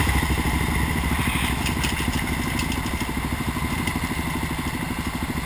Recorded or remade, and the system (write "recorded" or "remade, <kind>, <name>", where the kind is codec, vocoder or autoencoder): recorded